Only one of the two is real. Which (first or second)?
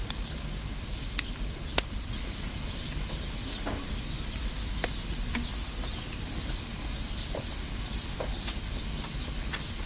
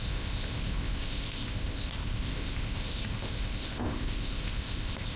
first